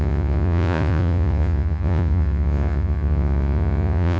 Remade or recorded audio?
remade